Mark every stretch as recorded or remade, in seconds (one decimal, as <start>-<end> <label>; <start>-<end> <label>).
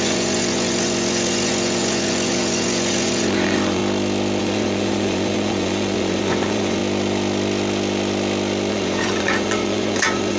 0.0-3.8 remade; 3.8-4.4 recorded; 4.4-6.8 remade; 6.8-8.7 recorded; 8.7-10.4 remade